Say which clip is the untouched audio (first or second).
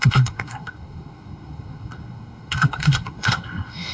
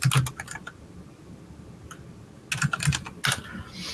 second